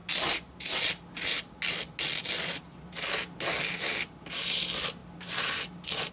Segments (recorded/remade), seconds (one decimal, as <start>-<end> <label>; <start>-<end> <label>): 0.0-6.1 recorded